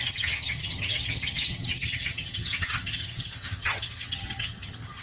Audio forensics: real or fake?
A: fake